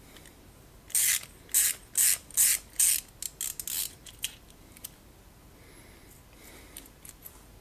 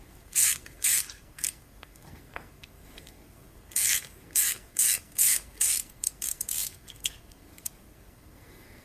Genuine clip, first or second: first